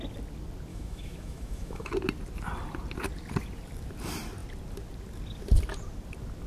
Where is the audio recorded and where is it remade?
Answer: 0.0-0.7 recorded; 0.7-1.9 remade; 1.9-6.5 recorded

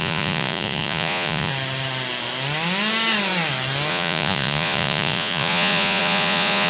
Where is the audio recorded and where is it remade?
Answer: 0.0-1.5 remade; 1.5-3.9 recorded; 3.9-6.7 remade

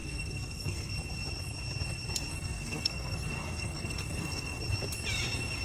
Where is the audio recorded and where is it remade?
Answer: 0.0-0.9 remade; 0.9-2.3 recorded; 2.3-4.6 remade; 4.6-5.6 recorded

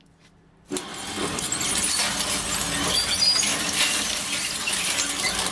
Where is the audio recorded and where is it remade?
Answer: 0.0-3.5 recorded; 3.5-4.8 remade; 4.8-5.5 recorded

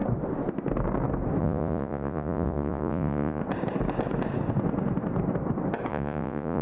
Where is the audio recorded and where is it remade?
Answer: 0.0-1.4 recorded; 1.4-3.4 remade; 3.4-5.9 recorded; 5.9-6.6 remade

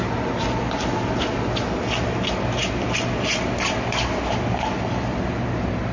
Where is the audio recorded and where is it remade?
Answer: 0.0-5.9 recorded

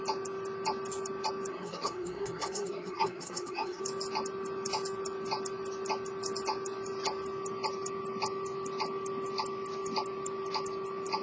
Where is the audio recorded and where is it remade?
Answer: 0.0-1.5 recorded; 1.5-3.8 remade; 3.8-11.2 recorded

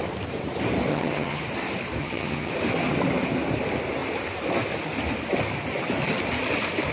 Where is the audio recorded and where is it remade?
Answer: 0.0-0.9 recorded; 0.9-1.4 remade; 1.4-2.0 recorded; 2.0-2.5 remade; 2.5-6.9 recorded